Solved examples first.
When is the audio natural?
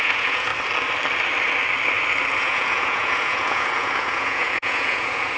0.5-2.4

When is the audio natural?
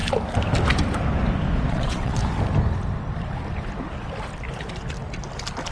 0.0-1.7; 2.2-5.7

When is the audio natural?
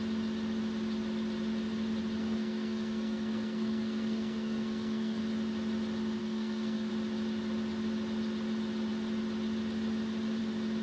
0.0-2.2; 5.2-6.2; 6.9-10.8